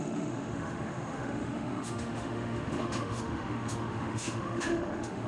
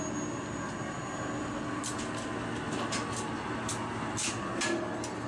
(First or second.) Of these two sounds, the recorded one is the second